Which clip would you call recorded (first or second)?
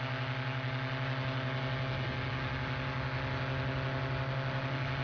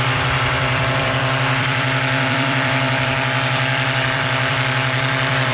first